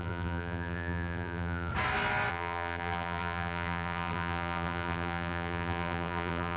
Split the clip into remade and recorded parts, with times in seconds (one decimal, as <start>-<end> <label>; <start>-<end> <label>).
0.0-1.7 remade; 1.7-2.3 recorded; 2.3-6.6 remade